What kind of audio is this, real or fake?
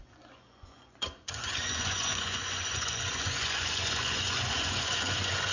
fake